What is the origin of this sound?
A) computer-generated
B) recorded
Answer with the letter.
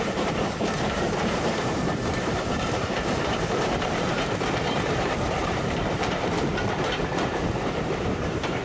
A